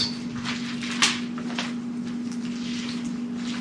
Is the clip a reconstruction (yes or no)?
no